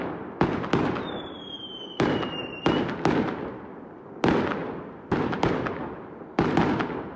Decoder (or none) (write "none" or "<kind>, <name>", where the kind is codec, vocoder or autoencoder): none